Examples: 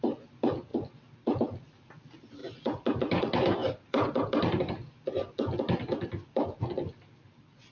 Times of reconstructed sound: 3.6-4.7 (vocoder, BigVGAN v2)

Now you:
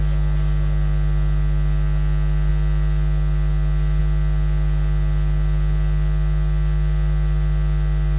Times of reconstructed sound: none

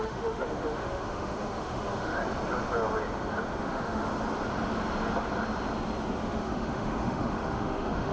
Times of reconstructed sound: 0.0-2.2 (autoencoder, DAC-VAE); 3.6-4.1; 6.2-8.1

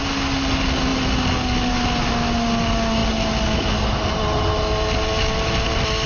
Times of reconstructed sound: none

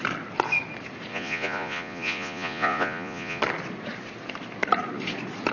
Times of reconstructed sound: 1.1-3.4 (vocoder, Vocos)

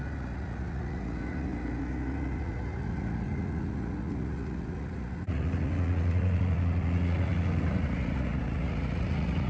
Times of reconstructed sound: 0.0-9.5 (vocoder, Vocos)

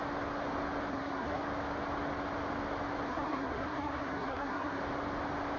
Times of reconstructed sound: 0.9-1.4 (codec, SNAC); 3.1-4.8

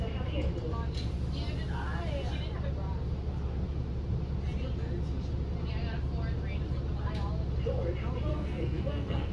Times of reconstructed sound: 8.3-9.3 (codec, SNAC)